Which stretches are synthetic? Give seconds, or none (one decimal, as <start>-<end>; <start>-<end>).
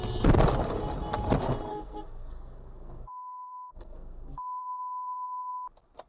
1.7-4.6